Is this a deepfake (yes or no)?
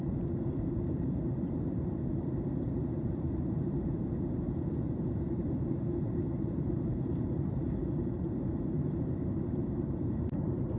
yes